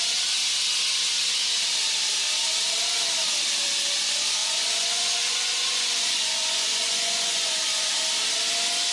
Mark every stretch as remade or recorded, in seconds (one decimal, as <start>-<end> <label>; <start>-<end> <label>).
0.0-4.4 recorded; 4.4-7.9 remade; 7.9-8.9 recorded